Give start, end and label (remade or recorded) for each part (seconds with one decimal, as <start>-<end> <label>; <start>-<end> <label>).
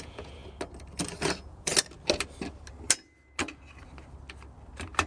0.0-0.4 remade; 0.4-1.2 recorded; 1.2-1.7 remade; 1.7-5.1 recorded